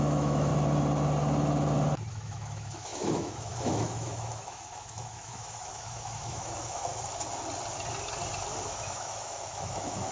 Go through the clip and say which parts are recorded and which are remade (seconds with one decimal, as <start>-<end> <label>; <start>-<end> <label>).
0.0-0.5 remade; 0.5-2.1 recorded; 2.1-6.9 remade; 6.9-8.7 recorded; 8.7-10.1 remade